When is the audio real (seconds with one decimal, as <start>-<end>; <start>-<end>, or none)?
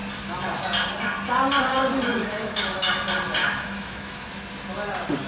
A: 0.0-2.1; 2.9-3.4; 4.3-5.3